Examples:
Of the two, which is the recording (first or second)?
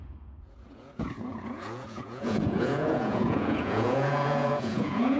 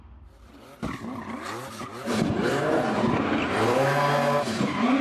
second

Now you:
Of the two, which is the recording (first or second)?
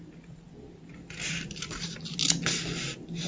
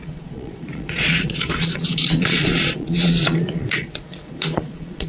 first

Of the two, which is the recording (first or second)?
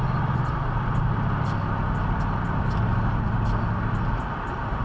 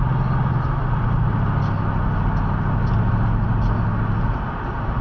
second